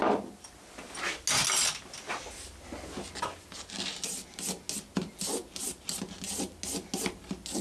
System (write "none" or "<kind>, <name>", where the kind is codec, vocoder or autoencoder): none